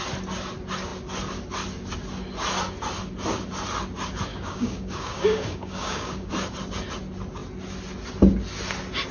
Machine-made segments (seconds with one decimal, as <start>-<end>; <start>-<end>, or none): 4.3-6.3